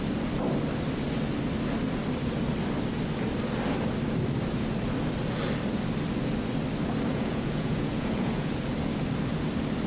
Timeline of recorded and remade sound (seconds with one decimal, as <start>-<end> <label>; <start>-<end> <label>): 0.0-7.1 recorded; 7.1-8.5 remade; 8.5-9.9 recorded